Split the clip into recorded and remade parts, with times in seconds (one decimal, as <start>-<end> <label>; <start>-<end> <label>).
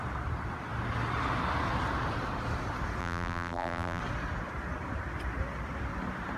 0.0-3.0 recorded; 3.0-4.0 remade; 4.0-6.4 recorded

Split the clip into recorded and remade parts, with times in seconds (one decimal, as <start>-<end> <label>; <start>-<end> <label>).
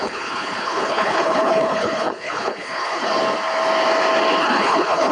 0.0-3.1 remade; 3.1-4.4 recorded; 4.4-5.1 remade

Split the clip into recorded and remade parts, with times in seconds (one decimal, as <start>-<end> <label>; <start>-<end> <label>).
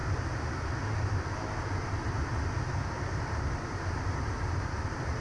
0.0-3.1 recorded; 3.1-5.2 remade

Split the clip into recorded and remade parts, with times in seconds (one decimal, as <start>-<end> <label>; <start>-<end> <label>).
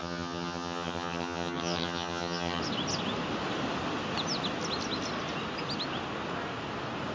0.0-2.6 remade; 2.6-7.1 recorded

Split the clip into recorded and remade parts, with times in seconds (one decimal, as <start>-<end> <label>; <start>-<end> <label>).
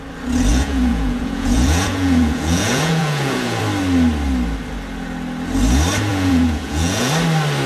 0.0-0.5 recorded; 0.5-3.6 remade; 3.6-6.1 recorded; 6.1-7.1 remade; 7.1-7.7 recorded